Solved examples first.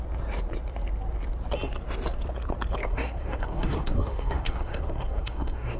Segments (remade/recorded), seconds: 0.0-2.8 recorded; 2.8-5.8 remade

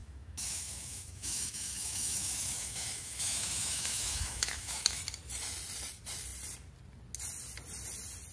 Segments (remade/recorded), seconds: 0.0-5.0 remade; 5.0-8.3 recorded

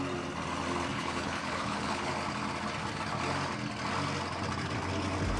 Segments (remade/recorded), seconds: 0.0-0.9 recorded; 0.9-2.1 remade; 2.1-5.4 recorded